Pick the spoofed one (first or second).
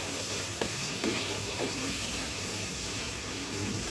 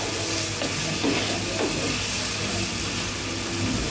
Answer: first